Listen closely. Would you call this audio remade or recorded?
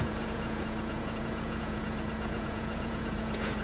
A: remade